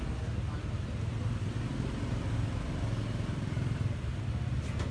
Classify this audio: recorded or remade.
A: recorded